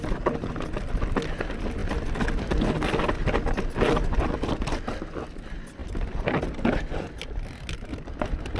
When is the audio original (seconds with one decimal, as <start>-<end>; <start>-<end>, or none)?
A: 0.0-8.6